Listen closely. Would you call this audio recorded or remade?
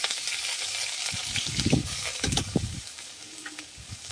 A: remade